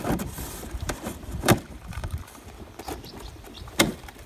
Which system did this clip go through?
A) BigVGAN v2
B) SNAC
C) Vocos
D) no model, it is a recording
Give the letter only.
A